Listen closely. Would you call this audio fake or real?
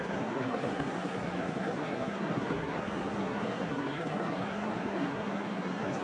fake